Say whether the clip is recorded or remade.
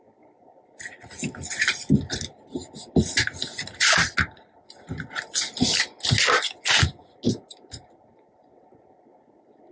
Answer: recorded